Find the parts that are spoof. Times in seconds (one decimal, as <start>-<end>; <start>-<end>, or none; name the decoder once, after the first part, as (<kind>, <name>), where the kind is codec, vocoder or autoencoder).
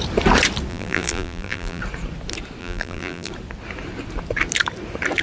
0.7-1.8 (vocoder, BigVGAN v2); 2.6-3.3